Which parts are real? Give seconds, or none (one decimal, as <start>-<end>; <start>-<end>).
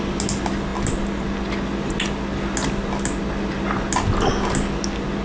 0.0-5.2